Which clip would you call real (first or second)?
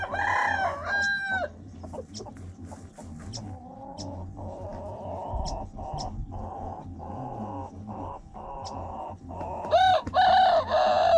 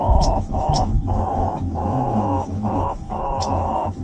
first